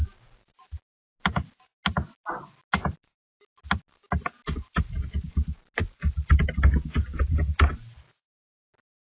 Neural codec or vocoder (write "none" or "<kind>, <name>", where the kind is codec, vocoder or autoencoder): none